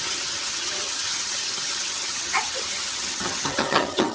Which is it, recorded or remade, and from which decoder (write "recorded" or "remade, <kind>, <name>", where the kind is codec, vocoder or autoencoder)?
remade, vocoder, HiFi-GAN